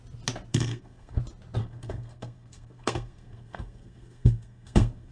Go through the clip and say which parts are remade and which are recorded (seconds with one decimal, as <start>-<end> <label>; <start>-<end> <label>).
0.0-0.5 recorded; 0.5-1.2 remade; 1.2-1.6 recorded; 1.6-5.1 remade

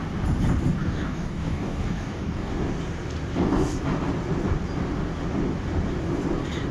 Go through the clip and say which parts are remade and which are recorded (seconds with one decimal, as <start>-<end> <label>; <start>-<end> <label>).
0.0-0.8 recorded; 0.8-2.5 remade; 2.5-6.7 recorded

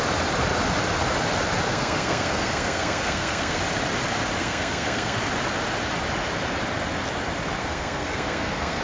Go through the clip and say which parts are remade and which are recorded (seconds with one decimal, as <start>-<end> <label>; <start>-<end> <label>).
0.0-1.7 recorded; 1.7-3.6 remade; 3.6-4.4 recorded; 4.4-5.2 remade; 5.2-7.6 recorded; 7.6-8.8 remade

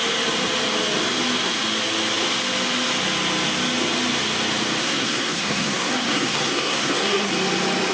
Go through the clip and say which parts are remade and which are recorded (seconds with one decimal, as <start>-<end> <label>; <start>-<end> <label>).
0.0-4.8 recorded; 4.8-7.3 remade; 7.3-7.9 recorded

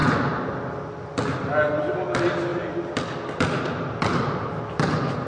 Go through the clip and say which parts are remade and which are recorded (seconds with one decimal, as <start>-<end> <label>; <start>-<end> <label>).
0.0-5.3 recorded

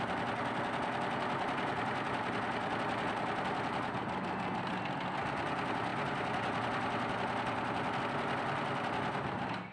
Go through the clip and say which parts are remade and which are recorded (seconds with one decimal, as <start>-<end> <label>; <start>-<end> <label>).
0.0-9.7 recorded